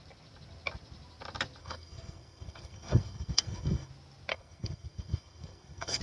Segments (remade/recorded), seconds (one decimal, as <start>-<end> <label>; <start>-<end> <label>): 0.0-1.6 recorded; 1.6-3.9 remade; 3.9-4.3 recorded; 4.3-6.0 remade